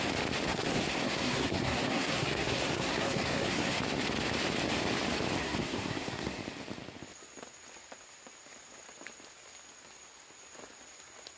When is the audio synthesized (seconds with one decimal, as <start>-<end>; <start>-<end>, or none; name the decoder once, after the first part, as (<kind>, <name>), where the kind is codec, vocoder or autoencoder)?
0.5-3.8 (codec, SNAC); 5.4-6.4